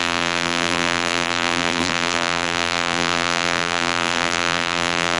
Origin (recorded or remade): remade